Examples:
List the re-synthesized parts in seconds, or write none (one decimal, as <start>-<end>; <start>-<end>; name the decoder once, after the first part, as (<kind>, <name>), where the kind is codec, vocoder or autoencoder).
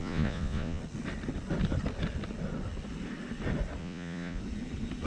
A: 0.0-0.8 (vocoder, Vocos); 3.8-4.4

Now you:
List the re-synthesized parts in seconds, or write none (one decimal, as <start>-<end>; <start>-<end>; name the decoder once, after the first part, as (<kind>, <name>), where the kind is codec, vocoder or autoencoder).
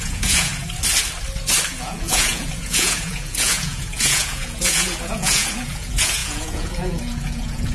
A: 0.0-0.5 (vocoder, Vocos); 1.8-7.7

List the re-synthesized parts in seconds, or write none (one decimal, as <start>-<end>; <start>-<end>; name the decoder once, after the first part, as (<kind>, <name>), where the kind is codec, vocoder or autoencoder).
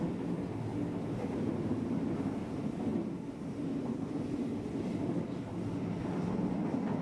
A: none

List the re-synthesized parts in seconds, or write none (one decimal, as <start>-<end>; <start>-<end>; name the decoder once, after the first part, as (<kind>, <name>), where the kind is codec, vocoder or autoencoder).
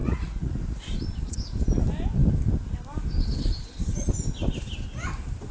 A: 0.0-0.8 (vocoder, Vocos)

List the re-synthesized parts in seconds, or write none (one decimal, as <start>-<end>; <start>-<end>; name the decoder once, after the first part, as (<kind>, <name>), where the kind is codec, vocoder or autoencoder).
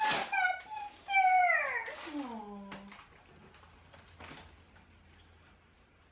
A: 0.0-1.4 (vocoder, BigVGAN v2); 4.6-6.1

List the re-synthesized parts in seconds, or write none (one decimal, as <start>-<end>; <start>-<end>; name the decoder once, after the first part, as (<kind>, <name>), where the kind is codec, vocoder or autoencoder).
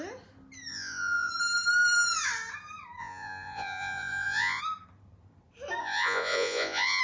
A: 0.7-1.3 (vocoder, Vocos); 3.0-4.6; 5.8-7.0